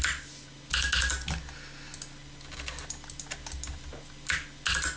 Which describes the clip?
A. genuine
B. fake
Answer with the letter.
A